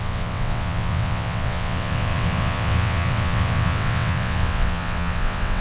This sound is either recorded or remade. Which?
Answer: remade